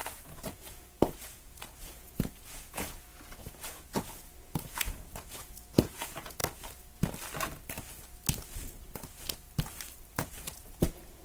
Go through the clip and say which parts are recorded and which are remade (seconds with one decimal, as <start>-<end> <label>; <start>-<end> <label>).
0.0-6.4 remade; 6.4-10.1 recorded; 10.1-11.2 remade